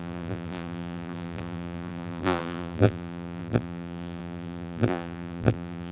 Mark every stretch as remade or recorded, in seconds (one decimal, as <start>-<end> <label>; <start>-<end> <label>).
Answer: 0.0-5.9 remade